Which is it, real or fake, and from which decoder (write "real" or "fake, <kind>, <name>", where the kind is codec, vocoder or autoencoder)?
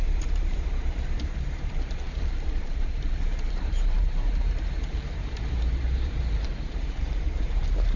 fake, vocoder, BigVGAN v2